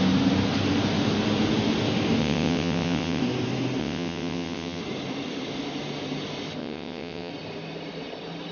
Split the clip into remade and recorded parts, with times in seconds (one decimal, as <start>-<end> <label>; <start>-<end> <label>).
0.0-2.2 recorded; 2.2-3.2 remade; 3.2-3.8 recorded; 3.8-4.8 remade; 4.8-6.6 recorded; 6.6-7.3 remade; 7.3-8.5 recorded